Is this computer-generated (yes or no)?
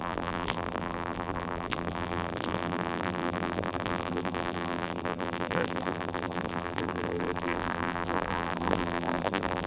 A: yes